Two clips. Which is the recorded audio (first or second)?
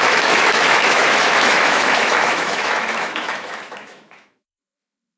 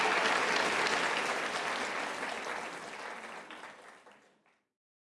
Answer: second